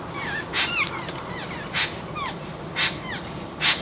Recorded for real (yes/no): yes